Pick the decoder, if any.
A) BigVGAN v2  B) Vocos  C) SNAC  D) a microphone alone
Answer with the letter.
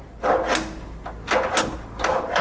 D